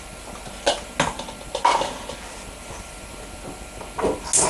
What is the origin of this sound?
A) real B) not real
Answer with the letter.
A